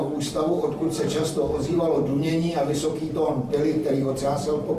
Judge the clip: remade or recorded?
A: remade